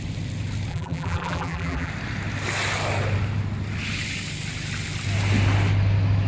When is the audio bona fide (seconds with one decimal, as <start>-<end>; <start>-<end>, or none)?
0.0-0.7; 1.9-6.3

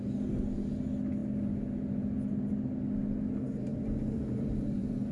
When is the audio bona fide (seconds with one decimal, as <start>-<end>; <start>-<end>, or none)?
0.0-3.7